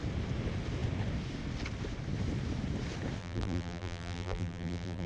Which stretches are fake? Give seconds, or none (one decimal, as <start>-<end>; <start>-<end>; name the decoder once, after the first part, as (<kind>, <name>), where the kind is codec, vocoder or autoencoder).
3.2-5.1 (vocoder, BigVGAN v2)